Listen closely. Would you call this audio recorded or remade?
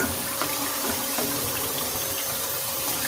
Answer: remade